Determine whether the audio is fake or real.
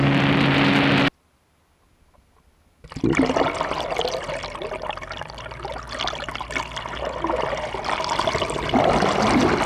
real